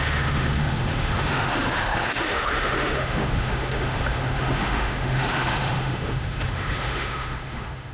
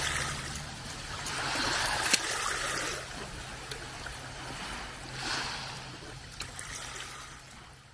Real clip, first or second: second